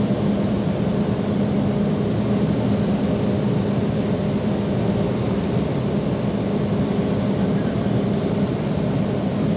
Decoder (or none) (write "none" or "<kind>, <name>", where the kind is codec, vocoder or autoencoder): none